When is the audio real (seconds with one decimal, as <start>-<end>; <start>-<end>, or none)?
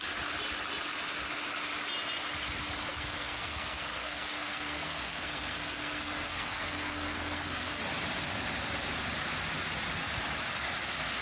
0.0-2.9; 7.8-11.2